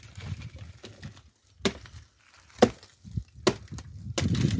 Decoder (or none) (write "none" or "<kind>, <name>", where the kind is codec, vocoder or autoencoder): none